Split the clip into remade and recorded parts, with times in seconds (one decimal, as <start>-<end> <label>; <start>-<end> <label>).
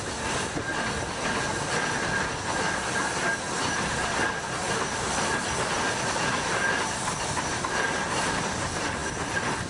0.0-9.7 recorded